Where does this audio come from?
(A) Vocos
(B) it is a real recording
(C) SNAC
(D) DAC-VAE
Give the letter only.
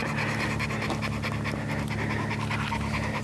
B